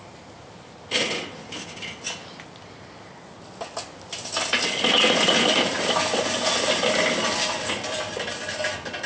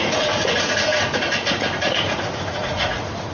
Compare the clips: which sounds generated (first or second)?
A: second